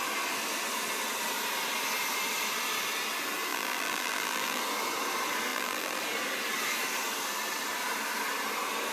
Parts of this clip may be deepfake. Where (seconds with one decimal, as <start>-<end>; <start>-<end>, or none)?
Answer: 3.5-4.6; 5.5-6.0